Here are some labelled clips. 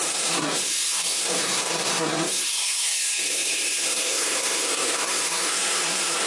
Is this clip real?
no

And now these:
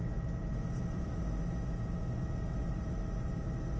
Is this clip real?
yes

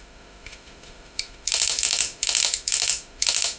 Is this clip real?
no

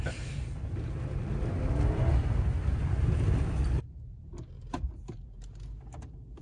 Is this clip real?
yes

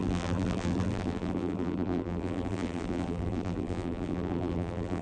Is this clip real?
no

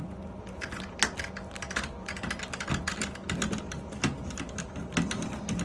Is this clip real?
yes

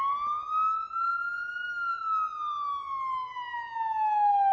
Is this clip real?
yes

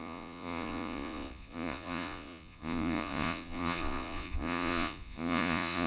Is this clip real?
no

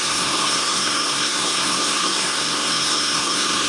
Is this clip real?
no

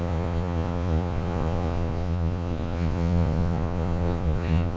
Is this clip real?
no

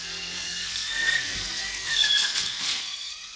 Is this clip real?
no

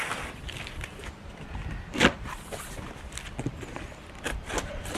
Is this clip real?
yes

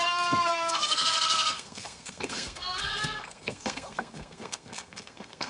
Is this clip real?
no